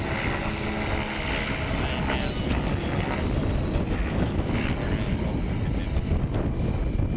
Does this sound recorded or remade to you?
recorded